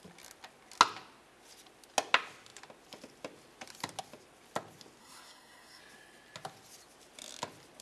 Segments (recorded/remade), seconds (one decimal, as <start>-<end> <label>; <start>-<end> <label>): 0.0-5.0 recorded; 5.0-5.8 remade; 5.8-7.8 recorded